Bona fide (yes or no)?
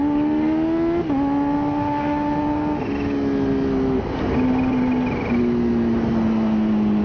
yes